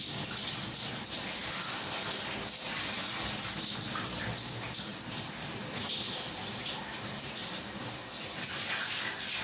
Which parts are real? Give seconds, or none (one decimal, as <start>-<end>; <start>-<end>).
0.0-1.4; 2.0-4.9; 8.6-9.4